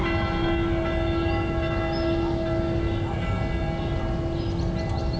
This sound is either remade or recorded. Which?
recorded